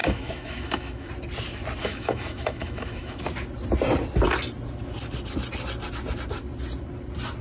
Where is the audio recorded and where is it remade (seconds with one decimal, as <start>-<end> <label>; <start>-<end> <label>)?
0.0-1.1 remade; 1.1-1.8 recorded; 1.8-3.2 remade; 3.2-7.4 recorded